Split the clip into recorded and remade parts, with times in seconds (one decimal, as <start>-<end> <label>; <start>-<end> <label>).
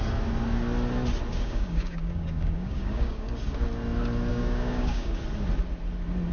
0.0-1.3 recorded; 1.3-3.3 remade; 3.3-4.3 recorded; 4.3-5.2 remade; 5.2-6.3 recorded